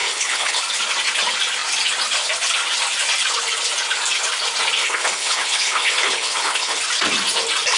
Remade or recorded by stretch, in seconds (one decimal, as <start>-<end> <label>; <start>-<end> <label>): 0.0-0.6 remade; 0.6-4.8 recorded; 4.8-6.8 remade; 6.8-7.8 recorded